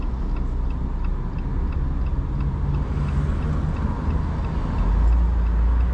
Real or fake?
real